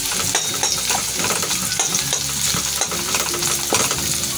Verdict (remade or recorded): remade